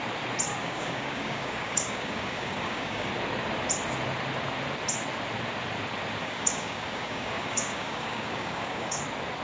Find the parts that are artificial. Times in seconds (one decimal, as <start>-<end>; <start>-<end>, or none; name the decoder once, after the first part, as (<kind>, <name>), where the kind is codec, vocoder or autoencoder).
0.6-3.1 (codec, DAC); 6.2-9.0